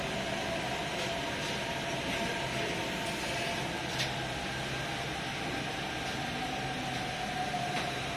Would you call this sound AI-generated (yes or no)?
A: no